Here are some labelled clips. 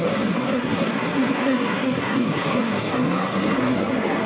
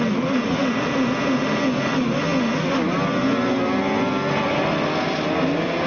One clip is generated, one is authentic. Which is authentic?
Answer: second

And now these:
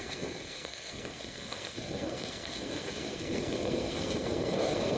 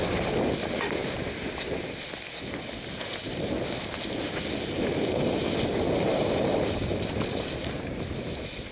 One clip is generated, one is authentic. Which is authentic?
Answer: second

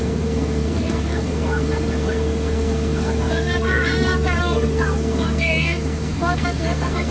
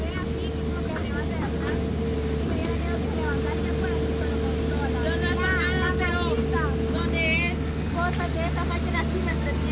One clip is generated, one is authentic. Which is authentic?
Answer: second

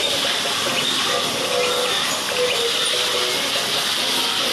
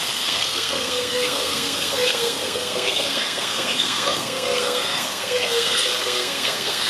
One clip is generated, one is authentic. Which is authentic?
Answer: first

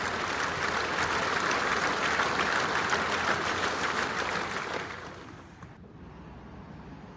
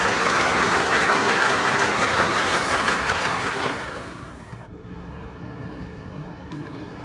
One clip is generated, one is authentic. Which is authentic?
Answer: first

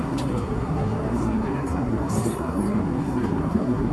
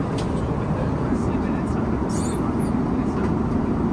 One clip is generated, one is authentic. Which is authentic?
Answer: second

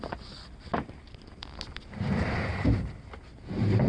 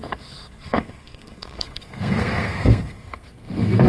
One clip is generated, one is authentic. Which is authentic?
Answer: first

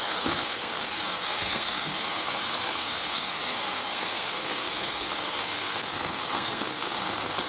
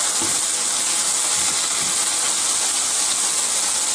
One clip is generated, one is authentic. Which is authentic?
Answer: second